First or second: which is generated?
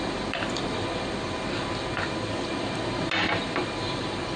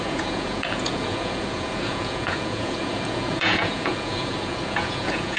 second